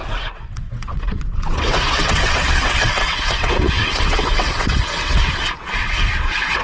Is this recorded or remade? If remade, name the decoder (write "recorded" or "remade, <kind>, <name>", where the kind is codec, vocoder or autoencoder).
remade, vocoder, WaveNeXt